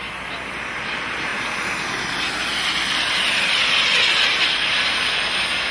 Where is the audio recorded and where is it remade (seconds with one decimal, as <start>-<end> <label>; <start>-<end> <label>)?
0.0-4.6 recorded; 4.6-5.7 remade